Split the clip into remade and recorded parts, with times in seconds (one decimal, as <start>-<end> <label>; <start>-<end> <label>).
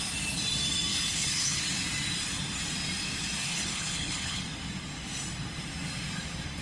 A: 0.0-0.9 recorded; 0.9-1.6 remade; 1.6-3.4 recorded; 3.4-4.4 remade; 4.4-6.6 recorded